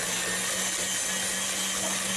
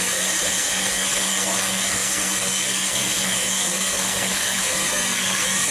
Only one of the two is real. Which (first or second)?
first